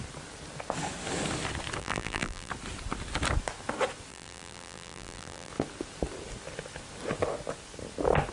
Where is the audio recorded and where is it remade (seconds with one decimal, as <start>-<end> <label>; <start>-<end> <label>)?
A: 0.0-1.8 recorded; 1.8-2.5 remade; 2.5-4.1 recorded; 4.1-5.5 remade; 5.5-8.3 recorded